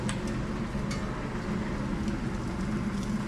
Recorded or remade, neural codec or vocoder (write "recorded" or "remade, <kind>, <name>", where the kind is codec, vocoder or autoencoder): recorded